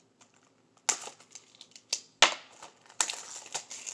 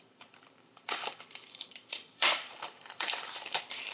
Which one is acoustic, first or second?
first